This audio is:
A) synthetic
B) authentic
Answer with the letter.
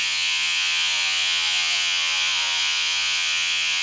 A